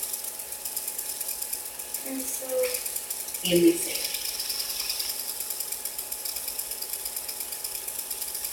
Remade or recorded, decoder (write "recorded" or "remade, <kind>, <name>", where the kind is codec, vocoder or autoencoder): recorded